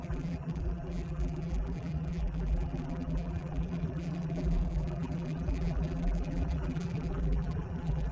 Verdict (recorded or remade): remade